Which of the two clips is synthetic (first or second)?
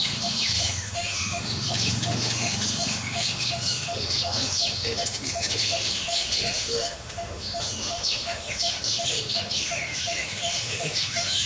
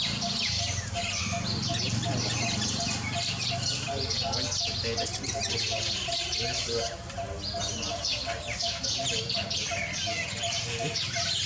first